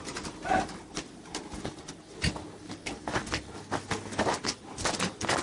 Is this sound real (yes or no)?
yes